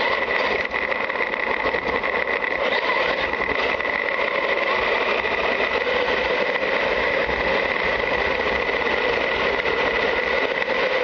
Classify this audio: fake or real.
real